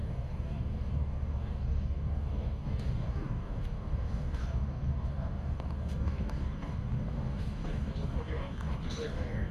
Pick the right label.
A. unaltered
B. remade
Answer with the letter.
B